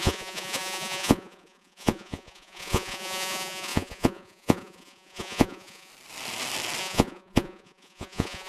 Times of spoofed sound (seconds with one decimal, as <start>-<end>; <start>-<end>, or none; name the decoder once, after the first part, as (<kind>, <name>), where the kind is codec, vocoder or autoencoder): 0.0-5.9 (vocoder, Vocos); 6.8-8.5